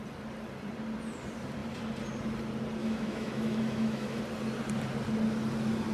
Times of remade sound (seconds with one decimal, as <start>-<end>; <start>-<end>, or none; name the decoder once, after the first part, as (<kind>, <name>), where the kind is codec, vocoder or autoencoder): 2.8-4.2 (autoencoder, DAC-VAE)